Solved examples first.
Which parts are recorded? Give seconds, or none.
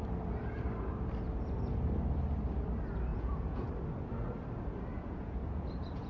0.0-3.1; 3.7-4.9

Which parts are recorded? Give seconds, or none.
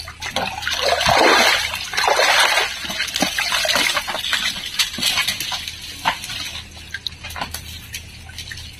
0.0-8.8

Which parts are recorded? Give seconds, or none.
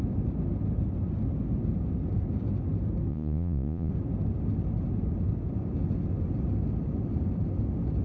0.0-3.1; 3.9-8.0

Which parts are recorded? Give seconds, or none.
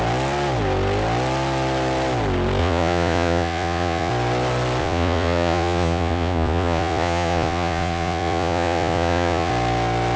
0.0-2.6; 4.1-4.8; 9.5-10.2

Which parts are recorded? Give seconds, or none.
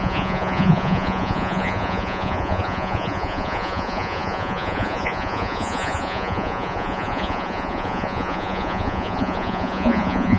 none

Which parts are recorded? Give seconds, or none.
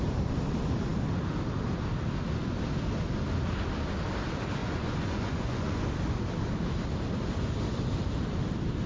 0.0-4.6; 5.9-8.9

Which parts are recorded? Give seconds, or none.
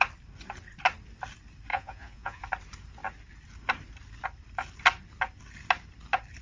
0.0-1.7; 2.4-6.4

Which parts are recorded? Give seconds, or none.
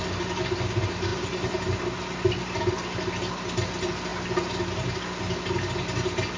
0.0-6.4